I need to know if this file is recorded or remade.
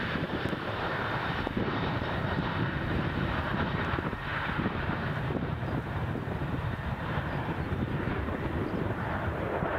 remade